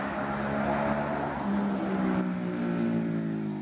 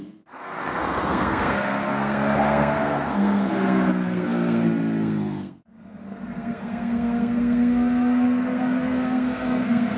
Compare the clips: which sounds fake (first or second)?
second